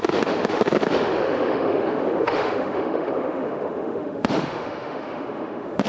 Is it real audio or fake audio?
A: fake